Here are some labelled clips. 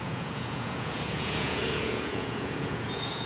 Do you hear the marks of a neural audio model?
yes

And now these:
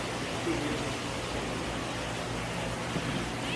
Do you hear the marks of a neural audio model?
no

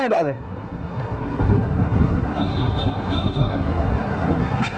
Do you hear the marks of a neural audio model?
yes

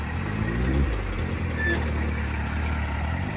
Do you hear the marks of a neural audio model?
no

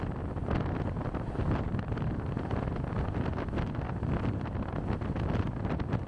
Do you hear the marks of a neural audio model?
no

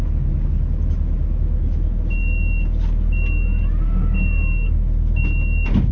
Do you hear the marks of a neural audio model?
no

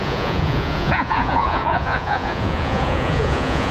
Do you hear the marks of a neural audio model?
yes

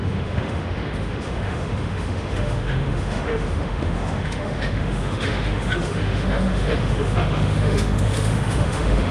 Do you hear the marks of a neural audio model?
yes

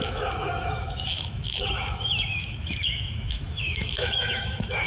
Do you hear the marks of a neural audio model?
yes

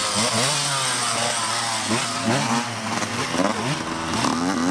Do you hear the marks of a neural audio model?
no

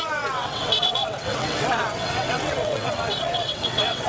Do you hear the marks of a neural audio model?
yes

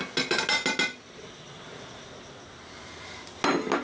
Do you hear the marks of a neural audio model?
no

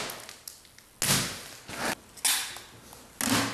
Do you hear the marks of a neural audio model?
no